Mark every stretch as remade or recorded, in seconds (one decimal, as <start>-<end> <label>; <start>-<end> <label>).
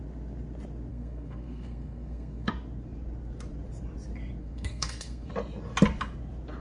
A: 0.0-0.9 recorded; 0.9-2.5 remade; 2.5-4.4 recorded; 4.4-5.3 remade; 5.3-6.6 recorded